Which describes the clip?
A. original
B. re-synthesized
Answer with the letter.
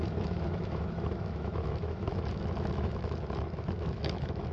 B